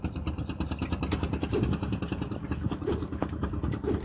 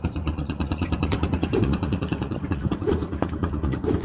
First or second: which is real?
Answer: first